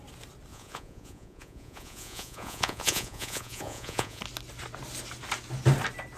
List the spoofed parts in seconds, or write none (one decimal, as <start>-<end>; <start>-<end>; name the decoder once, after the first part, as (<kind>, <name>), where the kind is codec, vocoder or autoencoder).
0.5-4.2 (vocoder, Vocos)